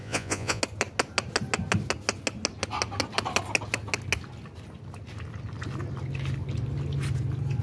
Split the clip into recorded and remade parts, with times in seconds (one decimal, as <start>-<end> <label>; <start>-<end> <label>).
0.0-0.6 remade; 0.6-7.6 recorded